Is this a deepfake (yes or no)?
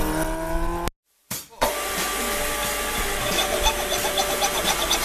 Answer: no